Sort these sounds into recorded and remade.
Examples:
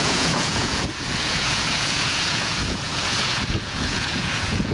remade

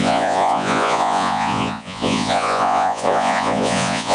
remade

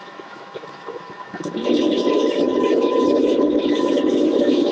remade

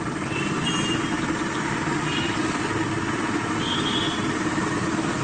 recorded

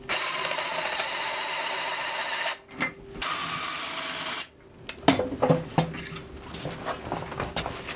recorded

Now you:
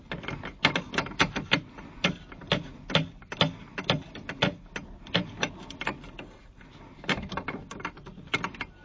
recorded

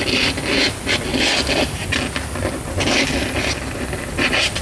recorded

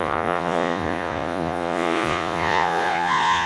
remade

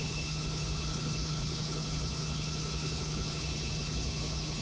remade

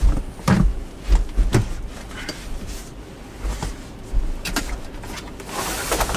recorded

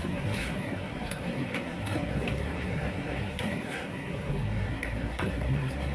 remade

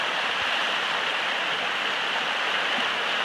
recorded